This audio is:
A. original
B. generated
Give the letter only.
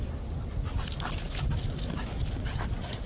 A